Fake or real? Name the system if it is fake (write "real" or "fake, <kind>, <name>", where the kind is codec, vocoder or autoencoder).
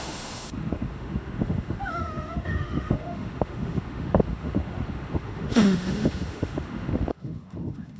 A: fake, autoencoder, DAC-VAE